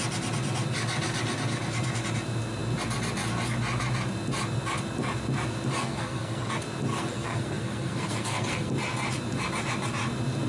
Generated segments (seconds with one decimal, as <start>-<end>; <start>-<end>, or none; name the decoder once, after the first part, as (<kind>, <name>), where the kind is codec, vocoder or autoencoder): 5.8-6.5 (codec, SNAC); 6.9-8.7